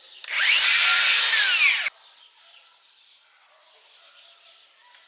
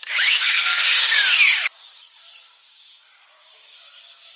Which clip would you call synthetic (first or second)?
second